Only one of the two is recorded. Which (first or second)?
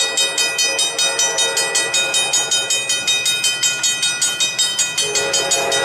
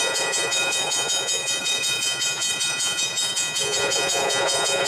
first